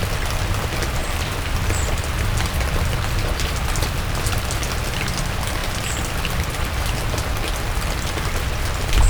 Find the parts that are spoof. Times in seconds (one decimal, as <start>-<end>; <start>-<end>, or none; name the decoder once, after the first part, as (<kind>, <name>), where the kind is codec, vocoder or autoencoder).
none